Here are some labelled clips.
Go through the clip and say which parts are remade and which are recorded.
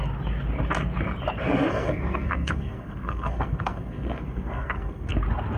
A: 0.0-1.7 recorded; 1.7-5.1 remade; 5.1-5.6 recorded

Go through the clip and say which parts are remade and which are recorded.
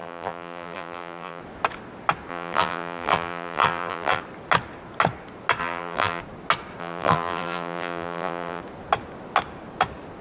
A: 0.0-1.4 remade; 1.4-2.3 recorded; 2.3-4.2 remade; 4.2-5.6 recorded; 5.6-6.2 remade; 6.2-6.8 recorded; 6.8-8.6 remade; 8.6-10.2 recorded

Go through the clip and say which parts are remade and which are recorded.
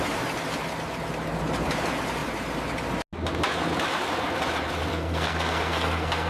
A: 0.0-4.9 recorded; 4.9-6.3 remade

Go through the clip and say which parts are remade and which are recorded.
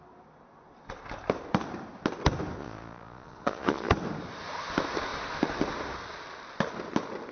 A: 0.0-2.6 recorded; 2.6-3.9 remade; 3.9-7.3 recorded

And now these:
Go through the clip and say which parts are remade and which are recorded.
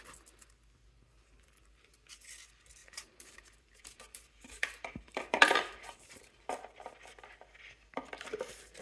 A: 0.0-2.8 recorded; 2.8-6.5 remade; 6.5-8.8 recorded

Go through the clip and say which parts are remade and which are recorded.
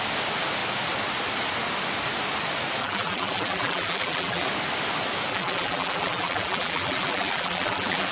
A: 0.0-2.8 recorded; 2.8-4.5 remade; 4.5-5.3 recorded; 5.3-8.1 remade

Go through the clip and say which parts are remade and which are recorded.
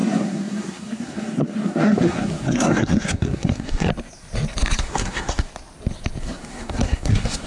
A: 0.0-3.9 remade; 3.9-4.8 recorded; 4.8-5.5 remade; 5.5-6.2 recorded; 6.2-7.5 remade